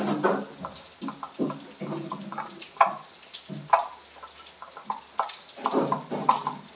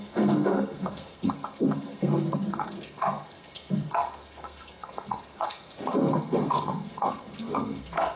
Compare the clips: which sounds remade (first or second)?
second